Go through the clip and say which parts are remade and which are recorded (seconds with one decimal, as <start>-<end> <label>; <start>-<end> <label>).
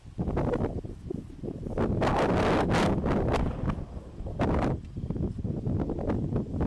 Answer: 0.0-6.7 recorded